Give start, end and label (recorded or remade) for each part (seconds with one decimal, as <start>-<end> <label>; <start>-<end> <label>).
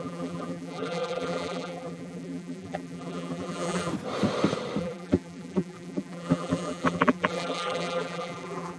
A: 0.0-3.9 remade; 3.9-4.8 recorded; 4.8-8.8 remade